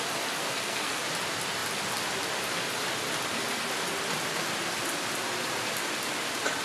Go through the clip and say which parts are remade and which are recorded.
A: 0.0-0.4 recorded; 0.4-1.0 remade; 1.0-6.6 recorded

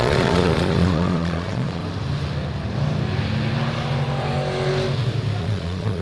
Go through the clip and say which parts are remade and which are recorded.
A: 0.0-1.8 remade; 1.8-5.4 recorded; 5.4-6.0 remade

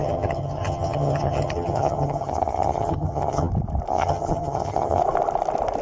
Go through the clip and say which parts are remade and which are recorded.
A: 0.0-3.5 remade; 3.5-3.9 recorded; 3.9-5.0 remade; 5.0-5.8 recorded